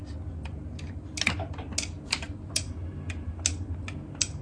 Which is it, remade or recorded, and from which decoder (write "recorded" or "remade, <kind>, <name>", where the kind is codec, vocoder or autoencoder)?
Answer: recorded